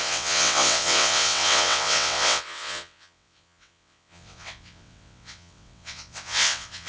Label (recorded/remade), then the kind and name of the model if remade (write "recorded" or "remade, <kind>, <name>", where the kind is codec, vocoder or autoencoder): remade, vocoder, WaveNeXt